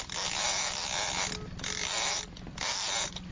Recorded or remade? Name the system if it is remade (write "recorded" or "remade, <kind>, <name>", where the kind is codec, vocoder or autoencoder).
recorded